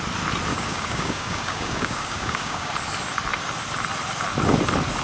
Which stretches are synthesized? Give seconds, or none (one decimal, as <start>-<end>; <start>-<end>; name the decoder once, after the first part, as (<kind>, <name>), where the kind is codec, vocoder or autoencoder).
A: 0.5-2.7 (codec, DAC)